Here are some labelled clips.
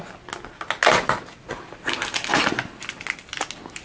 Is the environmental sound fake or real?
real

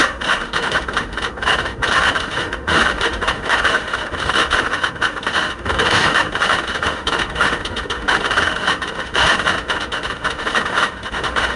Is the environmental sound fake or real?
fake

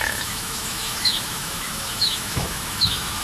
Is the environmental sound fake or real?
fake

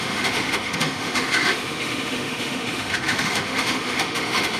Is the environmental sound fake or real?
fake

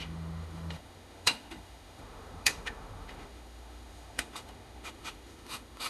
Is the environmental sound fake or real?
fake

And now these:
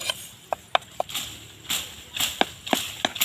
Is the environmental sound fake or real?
real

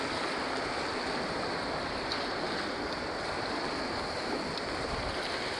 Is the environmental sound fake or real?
real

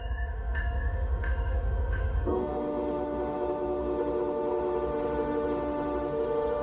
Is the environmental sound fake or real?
fake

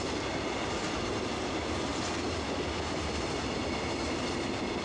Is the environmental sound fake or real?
real